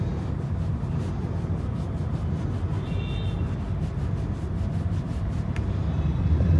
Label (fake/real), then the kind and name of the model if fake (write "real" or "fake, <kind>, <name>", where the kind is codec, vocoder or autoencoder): real